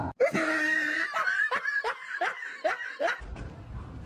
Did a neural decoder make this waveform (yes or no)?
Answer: no